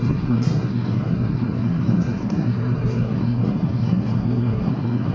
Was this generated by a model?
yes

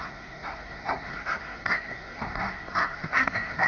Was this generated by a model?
yes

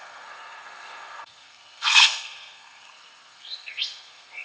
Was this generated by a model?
yes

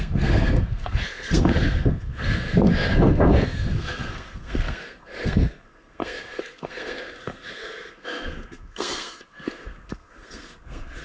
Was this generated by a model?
yes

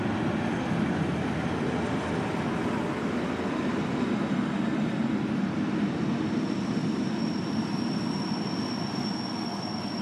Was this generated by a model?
no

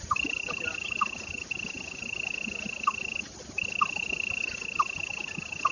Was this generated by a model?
no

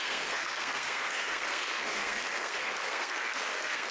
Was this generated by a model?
yes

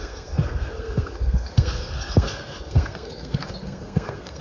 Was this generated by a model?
yes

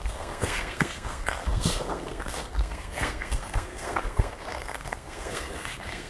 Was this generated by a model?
yes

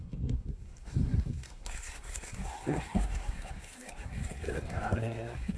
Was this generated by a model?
yes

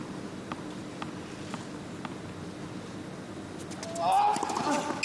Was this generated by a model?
no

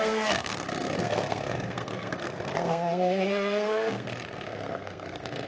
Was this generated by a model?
yes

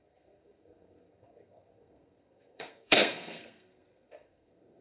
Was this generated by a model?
yes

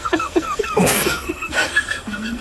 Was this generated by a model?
yes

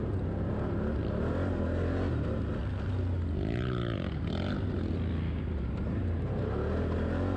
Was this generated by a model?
no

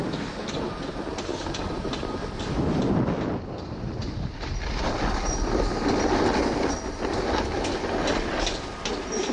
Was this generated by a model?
no